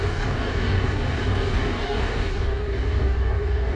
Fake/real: fake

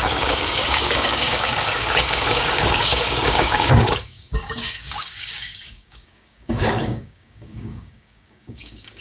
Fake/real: fake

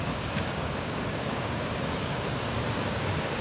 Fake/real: fake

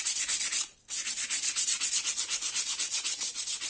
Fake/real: real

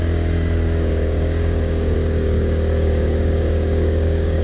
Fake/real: fake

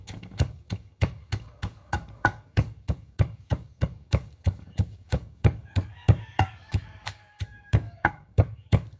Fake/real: fake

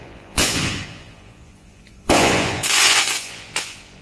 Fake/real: fake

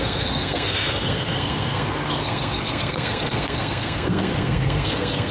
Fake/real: fake